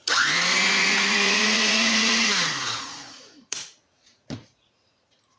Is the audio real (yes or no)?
no